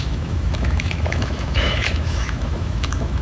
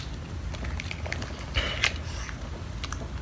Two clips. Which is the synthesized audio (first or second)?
first